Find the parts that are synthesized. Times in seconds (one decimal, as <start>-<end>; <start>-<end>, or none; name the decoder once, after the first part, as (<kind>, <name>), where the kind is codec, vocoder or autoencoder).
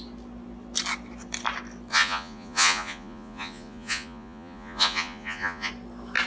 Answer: 1.9-5.7 (vocoder, Vocos)